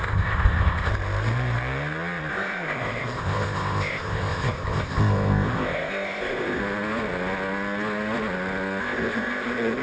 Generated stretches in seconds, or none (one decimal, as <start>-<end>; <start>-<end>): 0.0-0.9; 2.3-6.6; 8.8-9.8